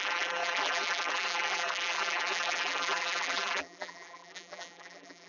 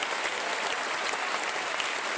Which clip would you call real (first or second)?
second